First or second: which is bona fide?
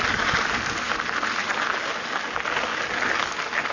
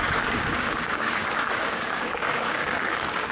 first